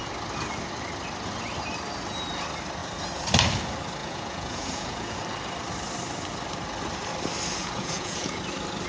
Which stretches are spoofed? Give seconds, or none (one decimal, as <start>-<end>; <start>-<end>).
4.0-5.2; 7.6-8.4